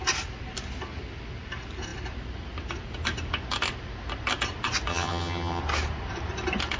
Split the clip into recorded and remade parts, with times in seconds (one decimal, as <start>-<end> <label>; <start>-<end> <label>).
0.0-4.9 recorded; 4.9-5.6 remade; 5.6-6.8 recorded